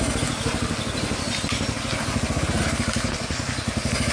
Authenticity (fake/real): real